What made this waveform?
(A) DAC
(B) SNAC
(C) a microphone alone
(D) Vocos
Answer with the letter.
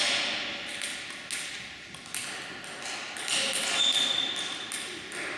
C